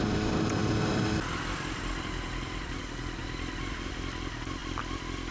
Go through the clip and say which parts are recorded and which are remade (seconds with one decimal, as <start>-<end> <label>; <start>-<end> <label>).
0.0-5.3 recorded